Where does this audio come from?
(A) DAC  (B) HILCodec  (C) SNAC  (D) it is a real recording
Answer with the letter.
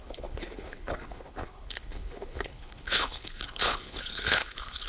B